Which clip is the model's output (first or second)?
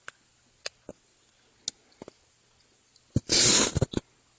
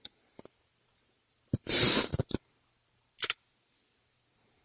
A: second